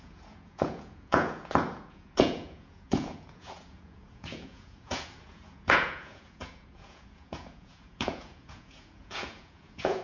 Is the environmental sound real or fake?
fake